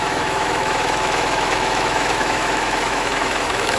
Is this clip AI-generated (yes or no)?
yes